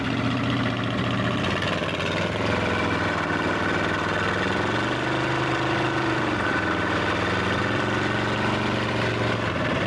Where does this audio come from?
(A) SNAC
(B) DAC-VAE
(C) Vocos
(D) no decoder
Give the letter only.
D